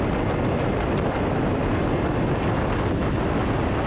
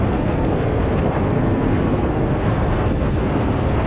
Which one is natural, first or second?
first